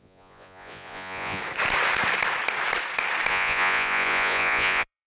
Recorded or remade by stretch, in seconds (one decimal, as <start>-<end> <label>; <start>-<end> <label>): 0.0-1.4 remade; 1.4-3.3 recorded; 3.3-5.1 remade